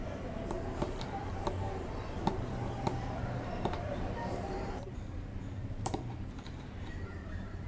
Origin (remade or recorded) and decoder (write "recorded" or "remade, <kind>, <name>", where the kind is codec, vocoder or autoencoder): remade, vocoder, BigVGAN v2